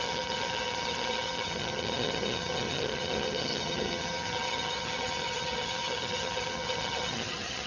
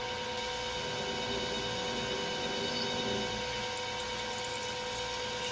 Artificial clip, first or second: first